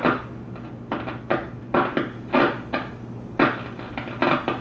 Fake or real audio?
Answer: real